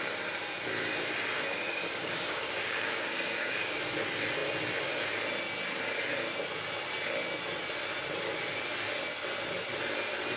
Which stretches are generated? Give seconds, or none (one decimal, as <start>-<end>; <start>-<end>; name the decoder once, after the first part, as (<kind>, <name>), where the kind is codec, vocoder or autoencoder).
1.5-3.8 (codec, DAC)